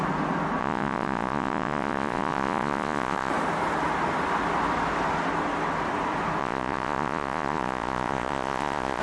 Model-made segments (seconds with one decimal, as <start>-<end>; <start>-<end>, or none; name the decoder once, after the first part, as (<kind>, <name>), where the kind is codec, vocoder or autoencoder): 0.6-3.3 (vocoder, Vocos); 6.4-9.0